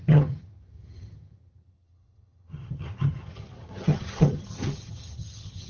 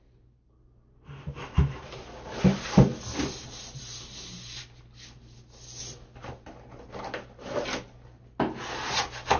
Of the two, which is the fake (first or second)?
first